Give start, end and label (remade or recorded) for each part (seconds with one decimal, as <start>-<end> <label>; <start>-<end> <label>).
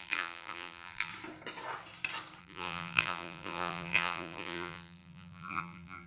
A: 0.0-1.1 remade; 1.1-2.4 recorded; 2.4-6.1 remade